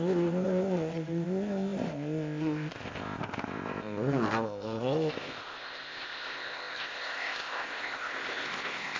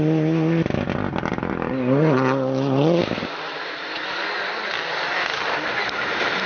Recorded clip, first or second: second